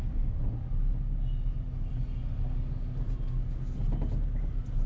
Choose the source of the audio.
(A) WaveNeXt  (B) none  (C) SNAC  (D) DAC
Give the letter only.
B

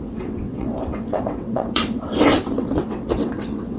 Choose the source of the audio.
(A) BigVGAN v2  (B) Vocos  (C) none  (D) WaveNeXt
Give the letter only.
D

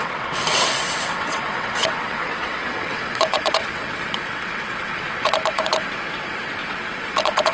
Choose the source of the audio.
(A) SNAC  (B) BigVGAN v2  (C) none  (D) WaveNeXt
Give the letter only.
D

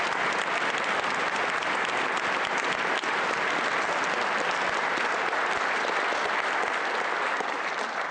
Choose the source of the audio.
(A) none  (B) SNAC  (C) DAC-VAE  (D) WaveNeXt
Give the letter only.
A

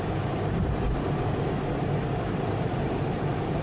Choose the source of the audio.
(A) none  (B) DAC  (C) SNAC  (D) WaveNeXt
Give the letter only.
A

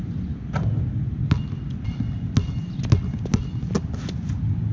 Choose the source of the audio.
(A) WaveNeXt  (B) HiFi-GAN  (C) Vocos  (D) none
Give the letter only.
D